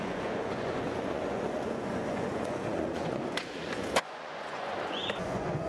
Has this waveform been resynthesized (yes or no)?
yes